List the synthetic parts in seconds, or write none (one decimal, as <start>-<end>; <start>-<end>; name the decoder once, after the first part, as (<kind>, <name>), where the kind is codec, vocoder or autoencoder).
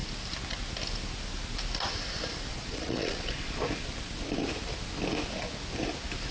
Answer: 2.5-3.6 (vocoder, Vocos)